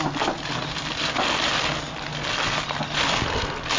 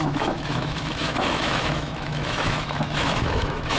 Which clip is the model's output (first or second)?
second